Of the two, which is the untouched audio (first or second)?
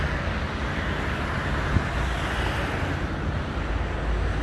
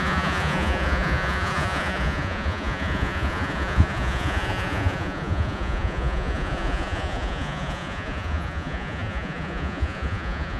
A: first